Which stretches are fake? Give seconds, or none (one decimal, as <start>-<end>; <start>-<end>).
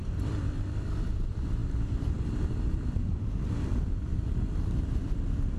0.0-5.6